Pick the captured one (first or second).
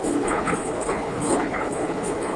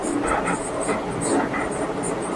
second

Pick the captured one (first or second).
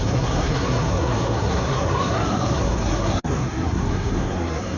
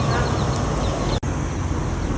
second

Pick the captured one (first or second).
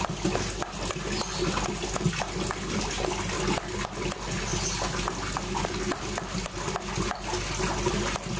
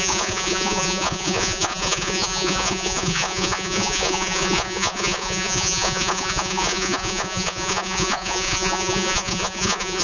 first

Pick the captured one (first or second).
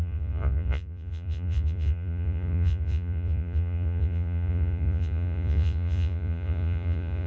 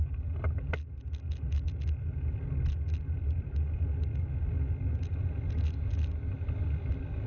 second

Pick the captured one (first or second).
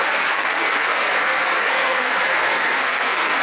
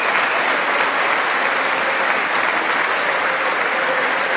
second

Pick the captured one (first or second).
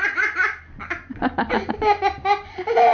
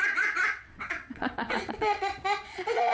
first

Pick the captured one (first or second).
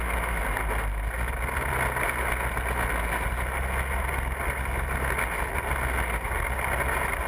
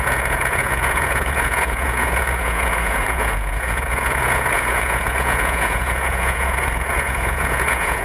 first